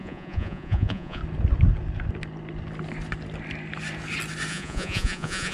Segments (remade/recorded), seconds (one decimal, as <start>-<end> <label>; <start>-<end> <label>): 0.0-1.2 remade; 1.2-4.5 recorded; 4.5-5.5 remade